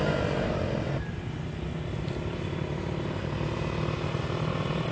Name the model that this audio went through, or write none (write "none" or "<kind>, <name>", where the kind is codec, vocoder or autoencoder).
none